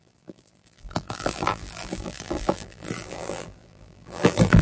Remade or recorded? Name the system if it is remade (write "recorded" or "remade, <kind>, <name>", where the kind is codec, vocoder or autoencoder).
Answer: remade, vocoder, BigVGAN v2